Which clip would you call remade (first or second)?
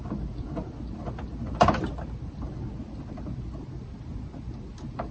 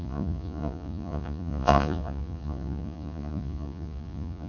second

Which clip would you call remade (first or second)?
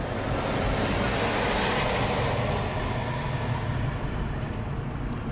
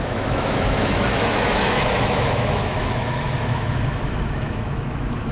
second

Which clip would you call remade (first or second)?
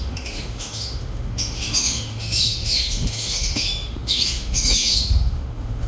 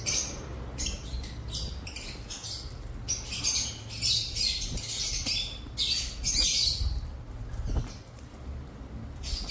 first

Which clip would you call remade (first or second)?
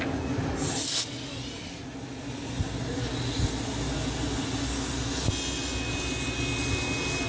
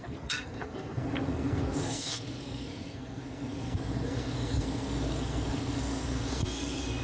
second